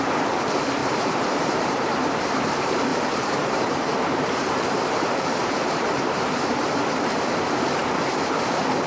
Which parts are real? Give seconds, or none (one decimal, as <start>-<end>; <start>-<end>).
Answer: 0.0-0.8; 2.1-2.9; 6.8-8.9